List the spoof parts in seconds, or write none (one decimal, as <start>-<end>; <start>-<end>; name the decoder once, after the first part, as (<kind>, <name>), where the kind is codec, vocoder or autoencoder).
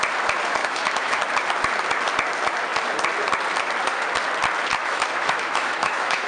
0.6-1.2 (autoencoder, DAC-VAE); 4.8-6.3